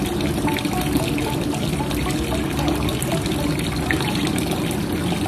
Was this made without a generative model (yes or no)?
yes